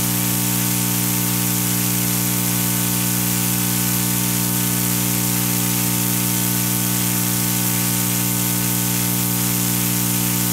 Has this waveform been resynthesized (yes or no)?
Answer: no